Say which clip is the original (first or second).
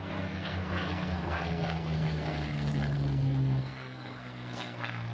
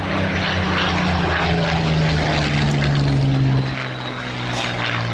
second